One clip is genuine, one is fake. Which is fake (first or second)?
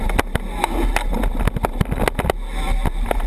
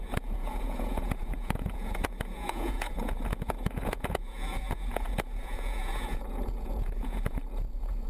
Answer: second